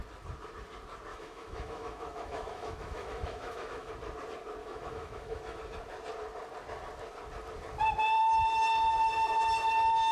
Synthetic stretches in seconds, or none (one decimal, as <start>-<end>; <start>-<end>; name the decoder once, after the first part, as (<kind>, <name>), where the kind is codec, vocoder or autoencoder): 1.1-3.9 (autoencoder, DAC-VAE); 4.6-5.6